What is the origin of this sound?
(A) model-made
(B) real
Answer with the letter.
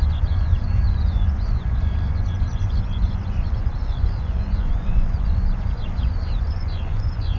A